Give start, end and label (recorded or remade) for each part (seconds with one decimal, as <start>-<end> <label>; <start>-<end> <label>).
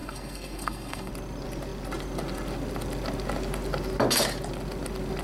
0.0-1.1 remade; 1.1-5.2 recorded